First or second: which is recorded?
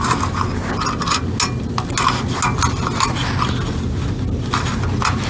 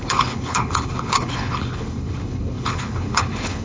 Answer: first